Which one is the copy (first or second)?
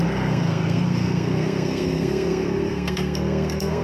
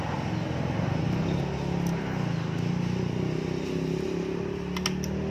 first